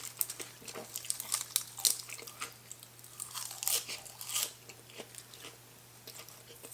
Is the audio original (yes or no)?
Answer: yes